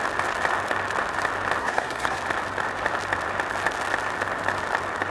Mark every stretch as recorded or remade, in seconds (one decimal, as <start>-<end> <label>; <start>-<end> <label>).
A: 0.0-1.6 recorded; 1.6-2.2 remade; 2.2-5.1 recorded